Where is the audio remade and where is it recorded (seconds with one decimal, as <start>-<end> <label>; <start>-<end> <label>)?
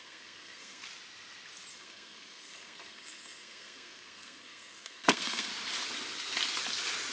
0.0-0.8 remade; 0.8-1.7 recorded; 1.7-5.5 remade; 5.5-7.1 recorded